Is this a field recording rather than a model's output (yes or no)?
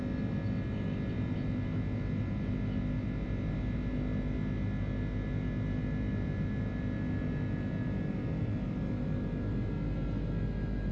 yes